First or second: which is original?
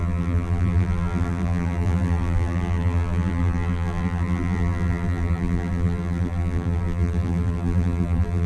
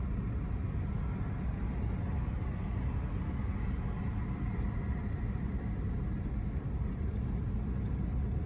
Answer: second